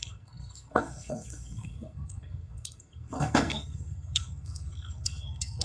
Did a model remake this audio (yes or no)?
yes